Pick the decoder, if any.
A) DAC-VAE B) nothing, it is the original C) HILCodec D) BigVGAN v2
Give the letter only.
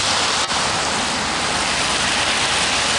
B